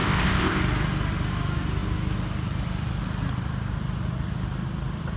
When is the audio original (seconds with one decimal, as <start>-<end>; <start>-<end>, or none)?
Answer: 0.6-5.2